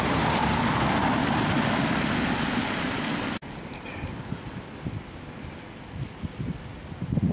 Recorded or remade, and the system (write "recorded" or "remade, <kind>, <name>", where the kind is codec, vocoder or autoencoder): recorded